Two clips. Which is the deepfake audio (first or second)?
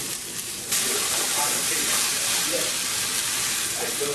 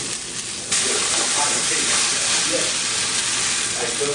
first